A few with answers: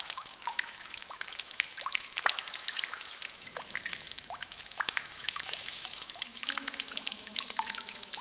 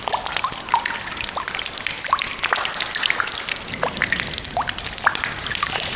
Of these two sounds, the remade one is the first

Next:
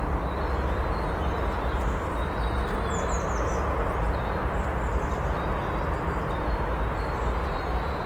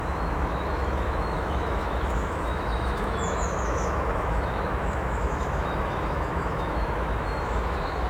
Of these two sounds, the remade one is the second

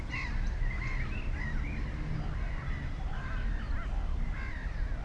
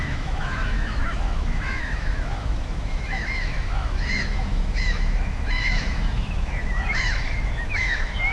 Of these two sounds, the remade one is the second